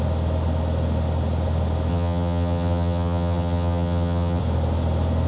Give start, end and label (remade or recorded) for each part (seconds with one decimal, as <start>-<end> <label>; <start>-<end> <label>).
0.0-1.9 recorded; 1.9-4.4 remade; 4.4-5.3 recorded